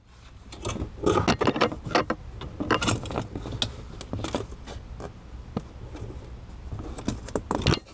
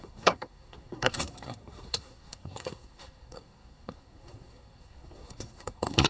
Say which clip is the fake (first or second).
second